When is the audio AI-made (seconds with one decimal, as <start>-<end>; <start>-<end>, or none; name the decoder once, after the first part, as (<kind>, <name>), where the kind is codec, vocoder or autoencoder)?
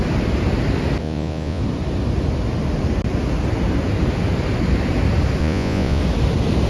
1.0-1.6 (vocoder, Vocos); 5.4-6.0